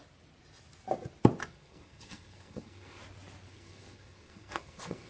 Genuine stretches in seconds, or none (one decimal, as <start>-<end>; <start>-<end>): 0.0-1.4; 3.0-3.5